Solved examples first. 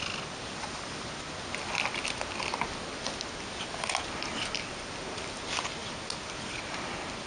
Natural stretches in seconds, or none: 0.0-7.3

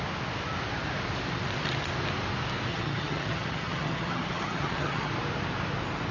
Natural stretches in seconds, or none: 0.0-2.7; 5.1-6.1

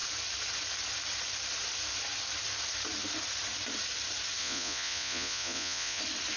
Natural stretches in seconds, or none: 0.0-4.4; 6.0-6.4